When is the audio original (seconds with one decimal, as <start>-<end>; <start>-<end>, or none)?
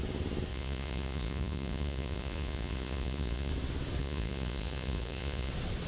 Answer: 0.0-0.5; 3.5-4.0; 5.5-5.9